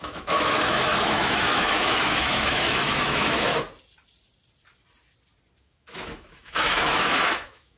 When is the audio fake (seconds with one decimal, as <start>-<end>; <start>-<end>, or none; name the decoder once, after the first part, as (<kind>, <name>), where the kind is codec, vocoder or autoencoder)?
0.0-3.5 (autoencoder, DAC-VAE); 5.6-7.8